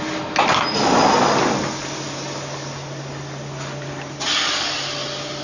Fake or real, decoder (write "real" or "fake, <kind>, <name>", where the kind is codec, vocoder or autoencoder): real